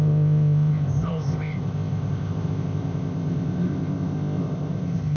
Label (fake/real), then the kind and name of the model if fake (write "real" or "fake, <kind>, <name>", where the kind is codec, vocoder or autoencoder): fake, codec, ZipCodec